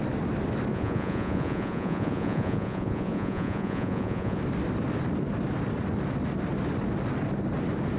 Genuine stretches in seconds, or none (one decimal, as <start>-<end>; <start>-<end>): 0.0-0.7; 4.4-8.0